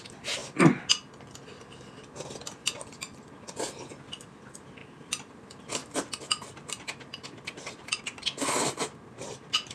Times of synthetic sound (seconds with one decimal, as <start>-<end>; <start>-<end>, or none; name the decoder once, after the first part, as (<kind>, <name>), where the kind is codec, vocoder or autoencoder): 4.8-5.3 (vocoder, BigVGAN v2); 5.8-8.0